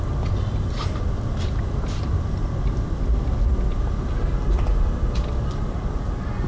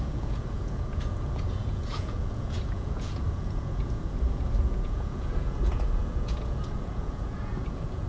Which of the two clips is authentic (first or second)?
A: first